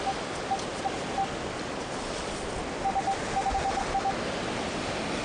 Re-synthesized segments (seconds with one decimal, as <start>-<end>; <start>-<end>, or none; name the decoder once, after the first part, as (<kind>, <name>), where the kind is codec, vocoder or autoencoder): none